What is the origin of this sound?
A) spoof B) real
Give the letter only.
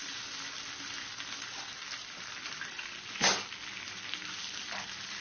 B